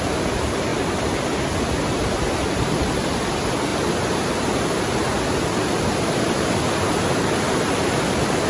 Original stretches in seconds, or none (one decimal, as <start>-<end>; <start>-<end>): 0.7-2.5; 3.7-5.4